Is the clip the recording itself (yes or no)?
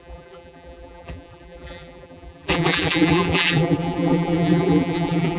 no